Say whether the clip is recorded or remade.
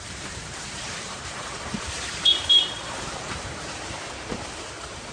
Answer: remade